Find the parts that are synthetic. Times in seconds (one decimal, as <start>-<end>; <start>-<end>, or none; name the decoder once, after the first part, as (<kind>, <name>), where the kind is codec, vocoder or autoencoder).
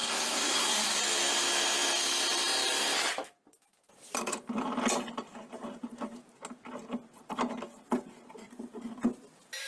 0.0-1.0 (codec, SNAC)